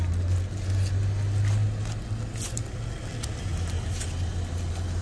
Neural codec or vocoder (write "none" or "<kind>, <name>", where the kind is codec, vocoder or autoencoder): none